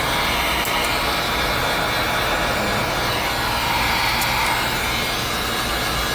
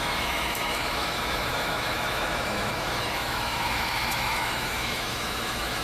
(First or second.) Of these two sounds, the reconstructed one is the second